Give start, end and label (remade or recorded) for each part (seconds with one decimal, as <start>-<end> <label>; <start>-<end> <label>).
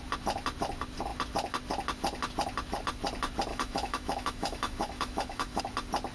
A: 0.0-3.5 recorded; 3.5-5.6 remade; 5.6-6.1 recorded